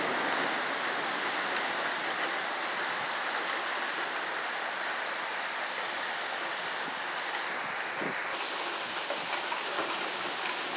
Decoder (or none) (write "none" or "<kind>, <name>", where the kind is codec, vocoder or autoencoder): none